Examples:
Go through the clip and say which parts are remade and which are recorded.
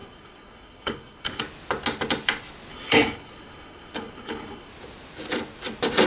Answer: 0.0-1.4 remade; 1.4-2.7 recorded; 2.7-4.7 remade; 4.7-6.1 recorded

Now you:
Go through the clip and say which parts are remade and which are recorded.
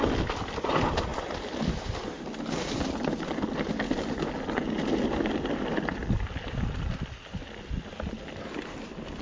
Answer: 0.0-9.2 recorded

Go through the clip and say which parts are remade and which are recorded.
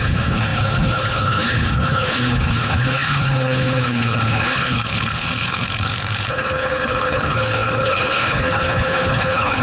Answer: 0.0-9.6 remade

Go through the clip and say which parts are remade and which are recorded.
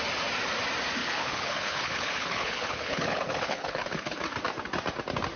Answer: 0.0-1.0 recorded; 1.0-4.2 remade; 4.2-5.4 recorded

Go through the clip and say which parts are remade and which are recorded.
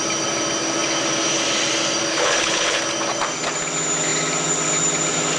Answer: 0.0-2.1 recorded; 2.1-2.8 remade; 2.8-5.4 recorded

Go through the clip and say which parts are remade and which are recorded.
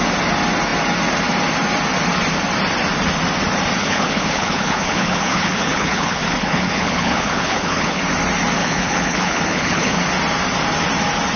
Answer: 0.0-3.8 recorded; 3.8-8.0 remade; 8.0-8.6 recorded; 8.6-10.0 remade; 10.0-11.4 recorded